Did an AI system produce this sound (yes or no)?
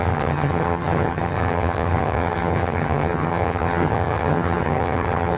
yes